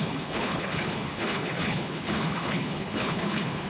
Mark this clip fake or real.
fake